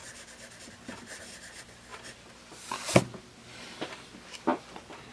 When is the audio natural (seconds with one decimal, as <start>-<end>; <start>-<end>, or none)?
0.0-5.1